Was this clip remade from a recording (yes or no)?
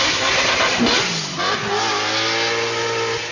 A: no